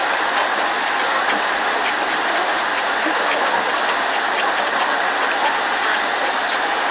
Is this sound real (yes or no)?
yes